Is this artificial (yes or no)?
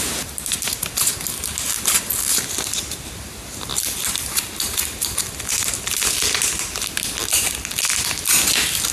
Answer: no